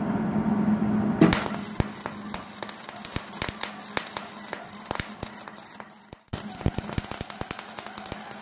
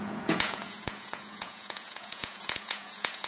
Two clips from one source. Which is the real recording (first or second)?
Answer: first